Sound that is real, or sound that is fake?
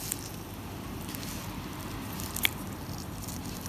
real